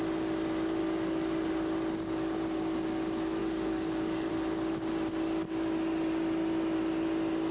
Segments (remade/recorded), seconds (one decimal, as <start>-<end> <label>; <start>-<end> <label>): 0.0-0.8 recorded; 0.8-1.5 remade; 1.5-3.4 recorded; 3.4-4.3 remade; 4.3-7.5 recorded